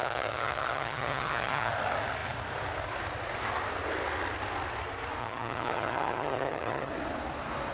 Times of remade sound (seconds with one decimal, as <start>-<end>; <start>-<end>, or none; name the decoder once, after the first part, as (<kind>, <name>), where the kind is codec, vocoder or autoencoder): 0.0-1.7 (vocoder, HiFi-GAN); 5.2-6.9